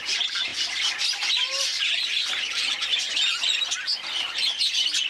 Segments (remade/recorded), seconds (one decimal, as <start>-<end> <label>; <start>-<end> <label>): 0.0-0.5 remade; 0.5-1.0 recorded; 1.0-5.1 remade